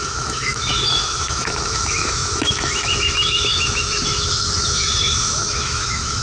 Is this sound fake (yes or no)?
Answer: yes